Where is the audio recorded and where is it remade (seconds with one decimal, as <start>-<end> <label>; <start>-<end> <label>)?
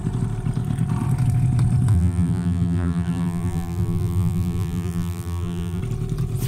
0.0-1.9 recorded; 1.9-5.8 remade; 5.8-6.5 recorded